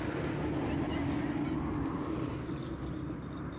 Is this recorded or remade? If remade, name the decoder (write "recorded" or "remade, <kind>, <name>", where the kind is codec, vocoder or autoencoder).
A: recorded